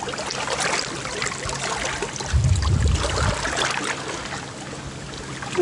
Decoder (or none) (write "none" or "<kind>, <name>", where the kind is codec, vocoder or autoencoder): none